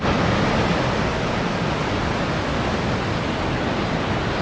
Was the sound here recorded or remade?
recorded